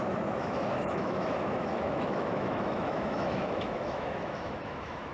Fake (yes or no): yes